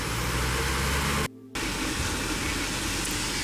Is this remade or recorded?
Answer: recorded